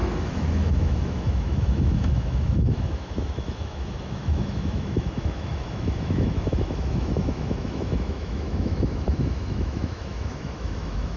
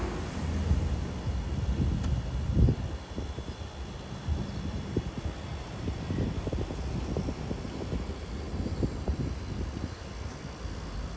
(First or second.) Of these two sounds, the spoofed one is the first